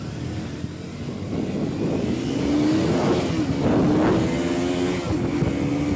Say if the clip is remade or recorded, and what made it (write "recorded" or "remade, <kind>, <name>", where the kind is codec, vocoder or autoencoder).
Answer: recorded